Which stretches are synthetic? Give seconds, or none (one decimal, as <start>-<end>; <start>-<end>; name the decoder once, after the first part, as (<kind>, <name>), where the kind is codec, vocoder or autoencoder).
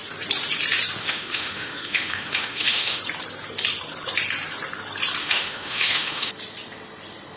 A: 1.0-3.0 (autoencoder, DAC-VAE); 5.2-6.3